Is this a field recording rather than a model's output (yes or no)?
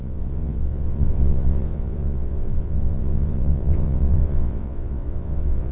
no